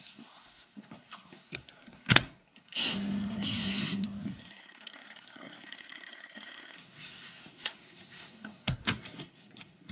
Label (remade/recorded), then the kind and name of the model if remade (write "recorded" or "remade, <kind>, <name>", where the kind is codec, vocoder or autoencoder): remade, codec, SNAC